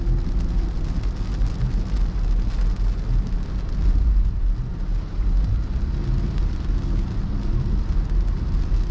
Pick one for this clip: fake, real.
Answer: real